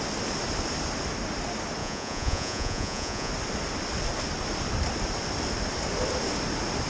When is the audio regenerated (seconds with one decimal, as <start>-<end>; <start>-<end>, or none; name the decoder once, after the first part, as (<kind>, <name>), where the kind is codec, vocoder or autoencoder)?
1.8-3.3 (vocoder, Vocos)